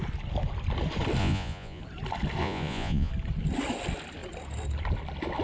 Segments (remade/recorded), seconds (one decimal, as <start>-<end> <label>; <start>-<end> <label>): 0.0-1.2 recorded; 1.2-1.8 remade; 1.8-2.4 recorded; 2.4-3.1 remade; 3.1-5.4 recorded